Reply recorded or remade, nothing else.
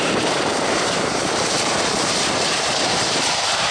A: remade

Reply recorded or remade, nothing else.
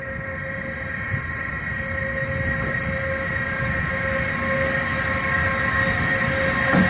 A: recorded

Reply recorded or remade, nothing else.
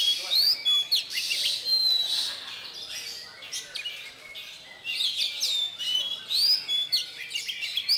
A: recorded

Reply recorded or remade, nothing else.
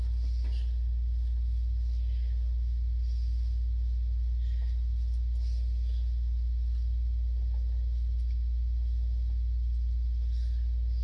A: recorded